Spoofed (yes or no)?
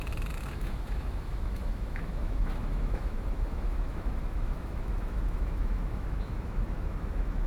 yes